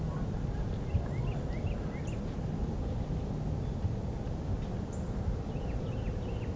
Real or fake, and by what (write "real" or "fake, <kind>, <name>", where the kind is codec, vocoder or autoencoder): real